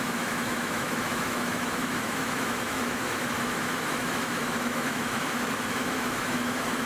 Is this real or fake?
fake